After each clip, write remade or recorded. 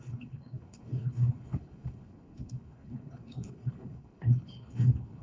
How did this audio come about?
remade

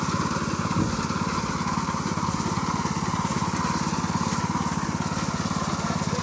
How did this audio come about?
recorded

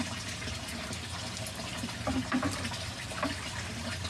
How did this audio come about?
recorded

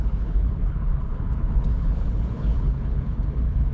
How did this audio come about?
remade